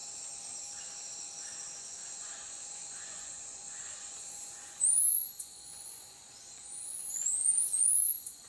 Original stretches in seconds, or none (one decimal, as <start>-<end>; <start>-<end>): 0.0-1.8